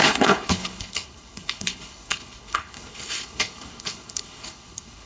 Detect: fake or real fake